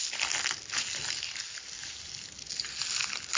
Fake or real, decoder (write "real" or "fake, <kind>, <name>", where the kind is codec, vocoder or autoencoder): real